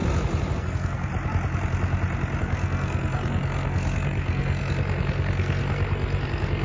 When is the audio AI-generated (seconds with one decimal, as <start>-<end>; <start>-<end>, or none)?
0.6-1.1; 2.4-6.6